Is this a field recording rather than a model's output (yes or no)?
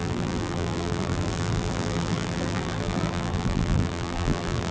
no